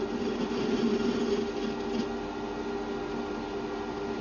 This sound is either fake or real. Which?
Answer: real